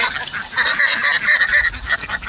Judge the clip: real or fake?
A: real